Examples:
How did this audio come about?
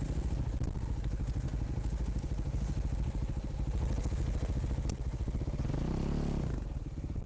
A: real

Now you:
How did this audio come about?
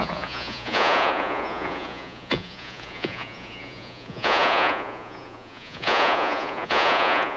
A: fake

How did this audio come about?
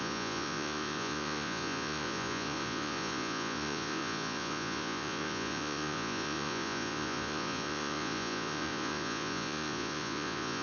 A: fake